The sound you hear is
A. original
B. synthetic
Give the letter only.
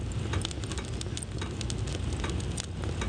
A